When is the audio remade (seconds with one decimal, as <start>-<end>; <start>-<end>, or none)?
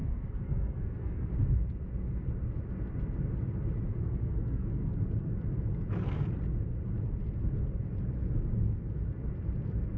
0.0-1.3; 3.9-4.8